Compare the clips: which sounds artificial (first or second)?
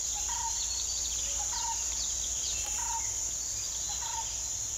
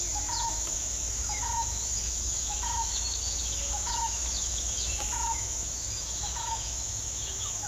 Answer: second